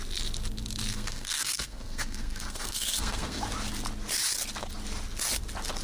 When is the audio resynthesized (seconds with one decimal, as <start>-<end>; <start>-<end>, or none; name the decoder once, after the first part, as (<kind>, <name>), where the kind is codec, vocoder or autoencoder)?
0.9-3.4 (codec, SNAC)